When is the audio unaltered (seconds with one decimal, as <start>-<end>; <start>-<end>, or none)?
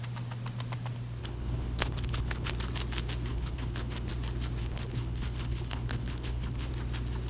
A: 0.0-1.2; 2.5-3.3; 4.1-4.6; 6.7-7.3